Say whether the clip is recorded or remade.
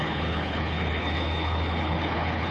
remade